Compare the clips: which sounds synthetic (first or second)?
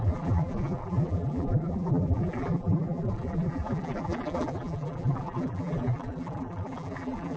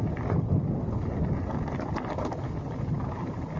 first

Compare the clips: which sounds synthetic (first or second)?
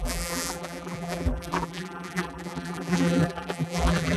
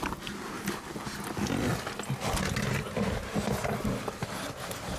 first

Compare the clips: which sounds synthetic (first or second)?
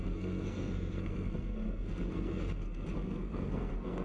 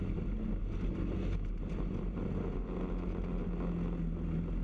first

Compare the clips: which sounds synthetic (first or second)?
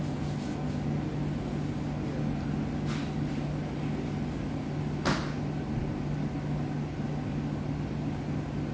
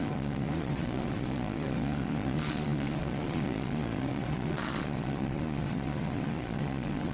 second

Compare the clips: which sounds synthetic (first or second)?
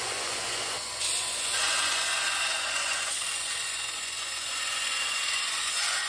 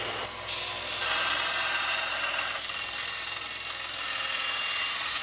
first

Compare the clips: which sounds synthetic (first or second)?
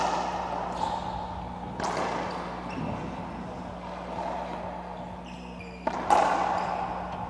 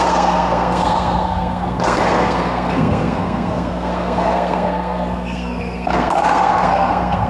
second